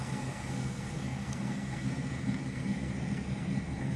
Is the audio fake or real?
fake